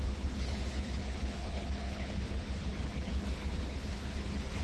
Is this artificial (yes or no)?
yes